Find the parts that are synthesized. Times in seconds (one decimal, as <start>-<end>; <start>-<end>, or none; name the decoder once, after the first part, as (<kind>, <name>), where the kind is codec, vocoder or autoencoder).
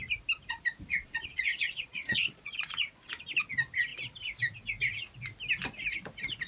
0.9-3.1 (vocoder, Vocos)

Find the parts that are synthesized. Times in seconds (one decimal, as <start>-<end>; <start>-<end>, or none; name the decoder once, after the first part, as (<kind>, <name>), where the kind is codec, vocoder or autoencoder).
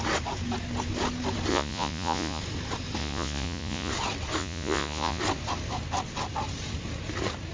1.5-2.4 (vocoder, Vocos); 3.0-3.9; 4.4-5.2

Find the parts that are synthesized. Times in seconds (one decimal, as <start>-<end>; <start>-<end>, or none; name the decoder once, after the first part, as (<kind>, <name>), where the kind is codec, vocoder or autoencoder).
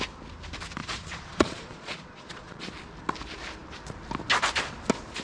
0.8-2.7 (vocoder, Vocos)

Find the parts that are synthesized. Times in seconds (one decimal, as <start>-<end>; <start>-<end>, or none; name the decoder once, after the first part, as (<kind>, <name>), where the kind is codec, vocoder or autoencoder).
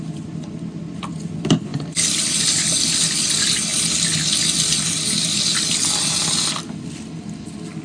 none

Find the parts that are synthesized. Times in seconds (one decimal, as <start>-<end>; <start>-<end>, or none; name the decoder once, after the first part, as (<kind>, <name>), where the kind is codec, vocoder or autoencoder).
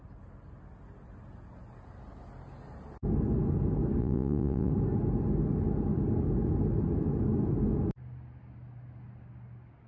4.0-4.7 (vocoder, Vocos)